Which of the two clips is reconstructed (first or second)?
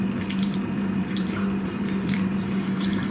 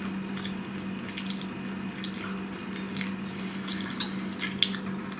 first